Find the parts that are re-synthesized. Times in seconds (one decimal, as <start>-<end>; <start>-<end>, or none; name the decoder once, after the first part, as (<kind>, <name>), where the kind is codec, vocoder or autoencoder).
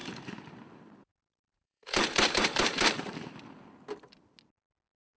0.0-3.1 (vocoder, BigVGAN v2)